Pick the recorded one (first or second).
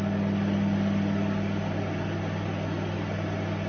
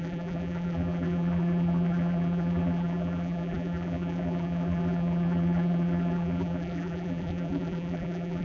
first